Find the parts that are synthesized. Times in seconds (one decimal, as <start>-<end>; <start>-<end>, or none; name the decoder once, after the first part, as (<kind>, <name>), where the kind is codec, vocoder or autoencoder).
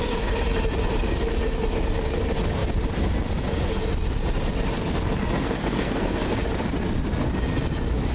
5.4-6.4 (codec, SNAC)